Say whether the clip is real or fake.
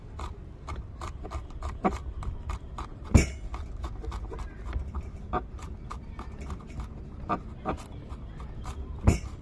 real